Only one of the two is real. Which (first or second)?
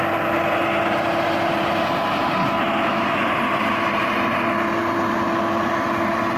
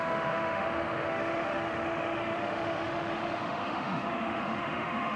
first